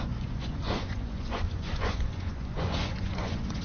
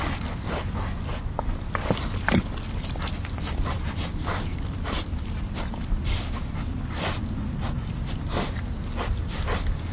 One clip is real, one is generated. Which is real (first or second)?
second